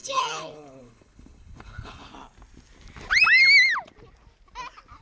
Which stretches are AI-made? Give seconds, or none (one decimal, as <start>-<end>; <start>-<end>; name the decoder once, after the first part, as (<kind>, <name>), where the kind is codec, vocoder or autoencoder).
0.0-2.1 (codec, HILCodec)